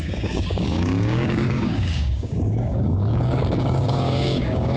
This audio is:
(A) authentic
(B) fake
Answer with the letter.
B